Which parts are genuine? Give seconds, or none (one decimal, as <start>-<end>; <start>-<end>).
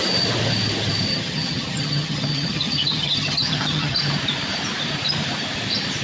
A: 0.0-1.1; 4.0-6.0